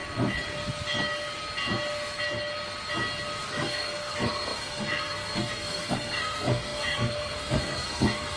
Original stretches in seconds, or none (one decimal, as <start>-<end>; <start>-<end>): 0.0-3.5